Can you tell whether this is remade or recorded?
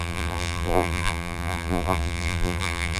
remade